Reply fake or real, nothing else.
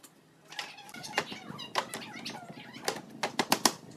real